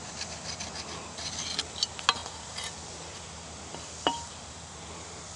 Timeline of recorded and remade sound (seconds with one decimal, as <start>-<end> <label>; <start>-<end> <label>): 0.0-5.4 recorded